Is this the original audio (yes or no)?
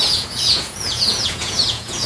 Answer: no